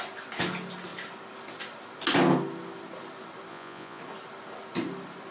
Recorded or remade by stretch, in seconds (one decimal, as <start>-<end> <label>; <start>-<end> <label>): 0.0-3.5 recorded; 3.5-4.0 remade; 4.0-5.3 recorded

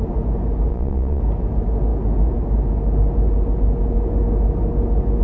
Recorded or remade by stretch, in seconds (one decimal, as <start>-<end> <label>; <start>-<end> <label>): 0.0-0.7 recorded; 0.7-1.2 remade; 1.2-5.2 recorded

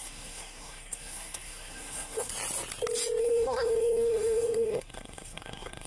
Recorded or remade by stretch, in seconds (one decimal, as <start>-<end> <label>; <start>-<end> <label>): 0.0-2.3 remade; 2.3-3.2 recorded; 3.2-5.9 remade

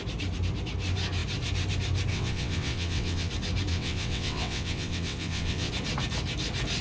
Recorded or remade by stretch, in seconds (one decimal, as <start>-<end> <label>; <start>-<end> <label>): 0.0-2.1 recorded; 2.1-3.3 remade; 3.3-3.7 recorded; 3.7-5.7 remade; 5.7-6.8 recorded

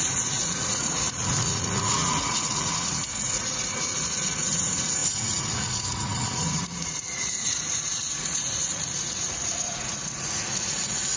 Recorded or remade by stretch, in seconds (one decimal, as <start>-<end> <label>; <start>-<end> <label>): 0.0-11.2 remade